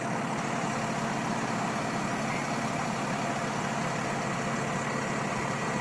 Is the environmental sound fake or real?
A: real